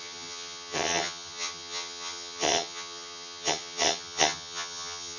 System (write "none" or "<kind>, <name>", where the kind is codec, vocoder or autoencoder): vocoder, HiFi-GAN